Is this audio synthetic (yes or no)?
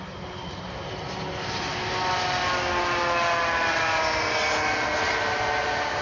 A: no